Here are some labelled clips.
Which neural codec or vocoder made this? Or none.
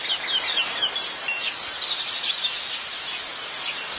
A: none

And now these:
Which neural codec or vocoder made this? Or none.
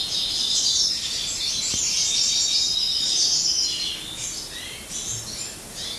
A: none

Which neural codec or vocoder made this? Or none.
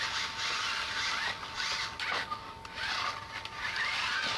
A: none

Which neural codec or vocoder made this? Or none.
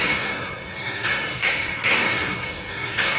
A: codec, SNAC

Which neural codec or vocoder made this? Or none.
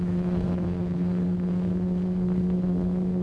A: codec, SNAC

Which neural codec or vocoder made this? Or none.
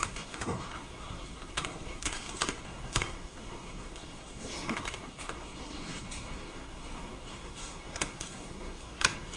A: codec, SNAC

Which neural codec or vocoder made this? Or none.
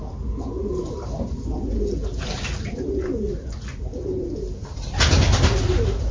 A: none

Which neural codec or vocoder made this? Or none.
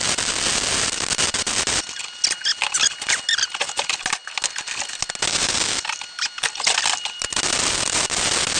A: none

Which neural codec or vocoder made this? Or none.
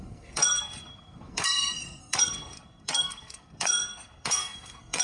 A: codec, SNAC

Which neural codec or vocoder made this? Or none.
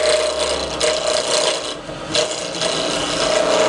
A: none